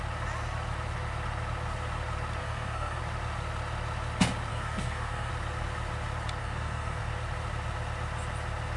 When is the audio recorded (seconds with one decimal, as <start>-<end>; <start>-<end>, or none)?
0.0-2.4; 3.0-4.5; 5.3-6.4; 7.0-8.8